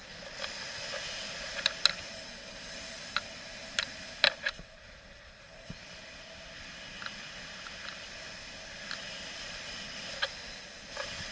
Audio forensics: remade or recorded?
recorded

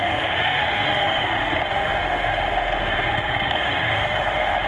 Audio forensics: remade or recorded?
remade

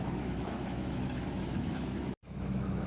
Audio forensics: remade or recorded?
remade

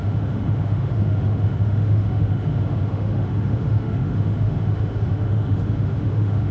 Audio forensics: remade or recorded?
remade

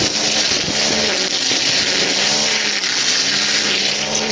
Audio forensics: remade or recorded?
recorded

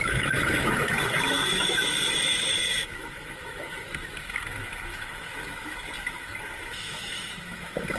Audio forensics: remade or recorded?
remade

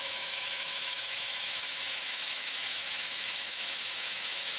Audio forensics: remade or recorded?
remade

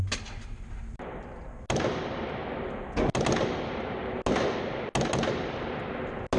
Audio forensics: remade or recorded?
recorded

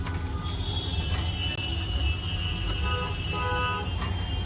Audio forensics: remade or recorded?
recorded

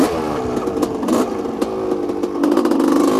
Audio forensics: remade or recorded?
recorded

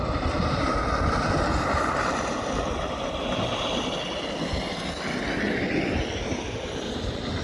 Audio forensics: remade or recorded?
recorded